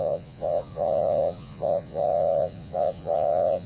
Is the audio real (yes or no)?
no